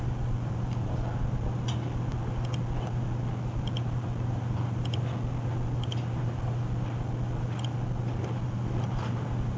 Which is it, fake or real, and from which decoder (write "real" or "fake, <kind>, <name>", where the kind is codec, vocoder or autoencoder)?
real